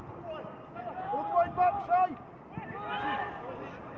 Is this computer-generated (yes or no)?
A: no